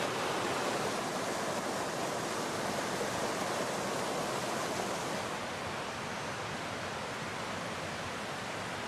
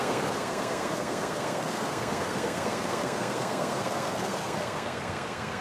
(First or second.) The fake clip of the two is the second